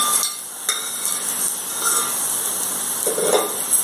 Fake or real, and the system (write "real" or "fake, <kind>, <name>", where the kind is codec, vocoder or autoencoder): real